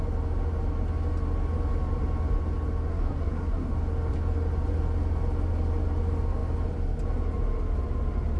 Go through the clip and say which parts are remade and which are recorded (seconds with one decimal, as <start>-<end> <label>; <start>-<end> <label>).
0.0-2.9 recorded; 2.9-3.7 remade; 3.7-8.4 recorded